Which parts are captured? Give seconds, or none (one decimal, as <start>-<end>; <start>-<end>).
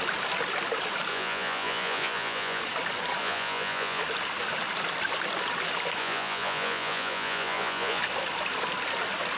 0.0-1.1; 2.6-3.2; 4.0-6.0; 8.0-9.4